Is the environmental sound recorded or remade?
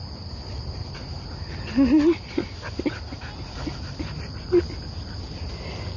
recorded